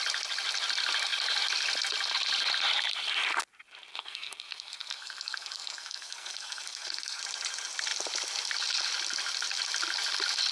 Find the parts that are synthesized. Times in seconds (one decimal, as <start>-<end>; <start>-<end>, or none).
3.9-7.2